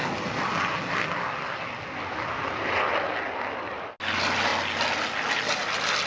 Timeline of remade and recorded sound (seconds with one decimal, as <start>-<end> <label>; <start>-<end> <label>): 0.0-6.1 recorded

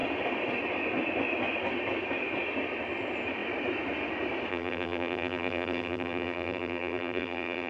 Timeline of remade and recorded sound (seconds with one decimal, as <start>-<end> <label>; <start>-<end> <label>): 0.0-4.5 recorded; 4.5-7.7 remade